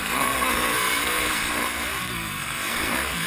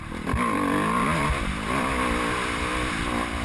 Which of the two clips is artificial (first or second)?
first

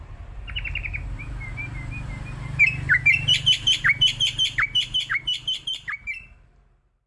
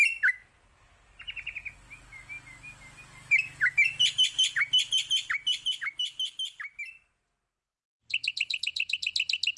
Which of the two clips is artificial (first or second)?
first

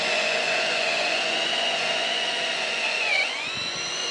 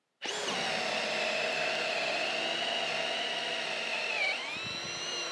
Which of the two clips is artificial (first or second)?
first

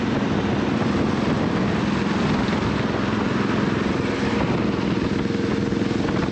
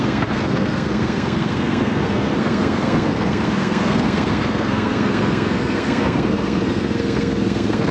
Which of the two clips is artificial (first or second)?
second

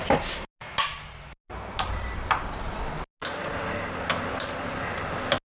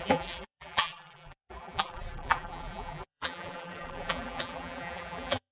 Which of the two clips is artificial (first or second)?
second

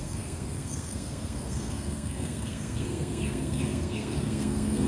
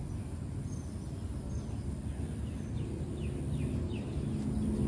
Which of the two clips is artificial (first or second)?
first